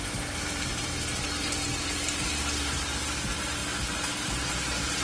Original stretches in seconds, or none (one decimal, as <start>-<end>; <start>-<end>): 0.7-1.4; 3.6-4.1